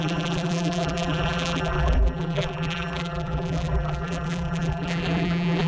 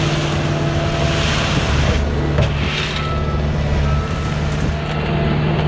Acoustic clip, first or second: second